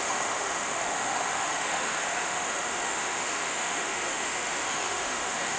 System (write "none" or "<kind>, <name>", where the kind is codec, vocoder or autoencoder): autoencoder, DAC-VAE